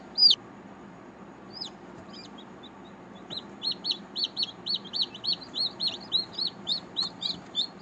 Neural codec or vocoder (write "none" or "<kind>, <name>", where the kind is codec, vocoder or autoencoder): none